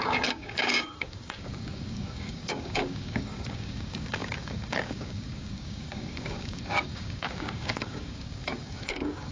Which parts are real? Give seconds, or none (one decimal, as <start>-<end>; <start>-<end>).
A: none